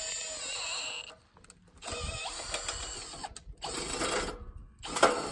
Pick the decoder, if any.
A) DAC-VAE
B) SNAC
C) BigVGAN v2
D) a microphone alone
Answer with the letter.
D